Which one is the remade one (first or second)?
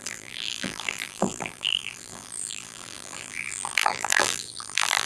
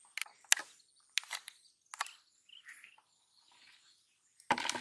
first